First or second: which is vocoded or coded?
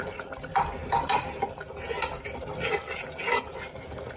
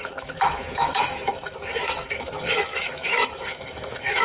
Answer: second